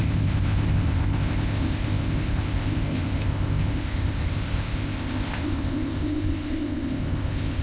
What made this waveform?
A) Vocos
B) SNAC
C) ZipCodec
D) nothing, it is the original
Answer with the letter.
C